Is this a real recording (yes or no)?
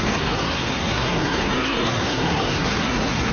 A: no